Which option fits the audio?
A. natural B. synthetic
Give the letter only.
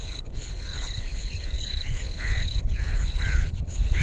B